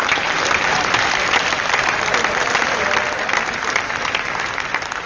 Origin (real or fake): real